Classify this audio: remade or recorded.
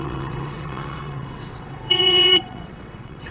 remade